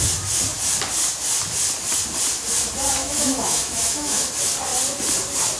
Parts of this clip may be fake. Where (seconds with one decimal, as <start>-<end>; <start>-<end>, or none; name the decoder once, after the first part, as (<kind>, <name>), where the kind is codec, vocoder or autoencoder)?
3.0-4.3 (autoencoder, DAC-VAE)